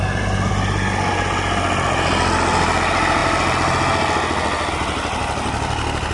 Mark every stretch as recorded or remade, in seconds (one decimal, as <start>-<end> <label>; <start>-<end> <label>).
0.0-6.1 recorded